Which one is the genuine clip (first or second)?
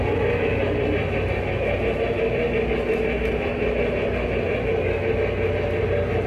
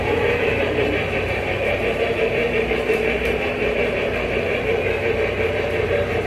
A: first